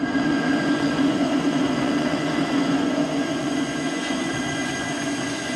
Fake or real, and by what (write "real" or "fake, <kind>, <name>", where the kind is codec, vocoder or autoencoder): fake, vocoder, Vocos